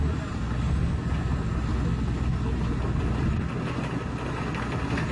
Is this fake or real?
real